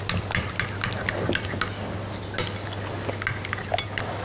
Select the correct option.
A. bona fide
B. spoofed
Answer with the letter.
A